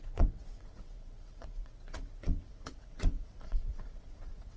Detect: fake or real fake